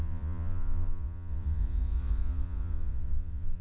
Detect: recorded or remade remade